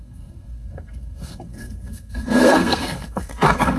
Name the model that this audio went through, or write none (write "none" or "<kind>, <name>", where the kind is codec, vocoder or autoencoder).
codec, SNAC